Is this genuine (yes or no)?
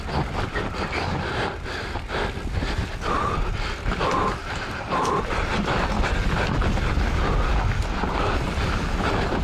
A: yes